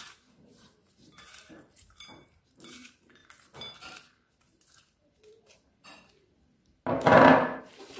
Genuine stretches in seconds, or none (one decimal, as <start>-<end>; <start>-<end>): 3.2-7.6